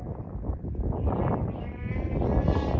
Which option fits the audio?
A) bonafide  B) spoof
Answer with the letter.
A